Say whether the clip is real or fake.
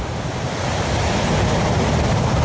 real